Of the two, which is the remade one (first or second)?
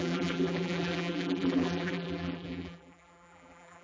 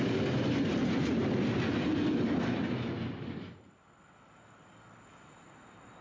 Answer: first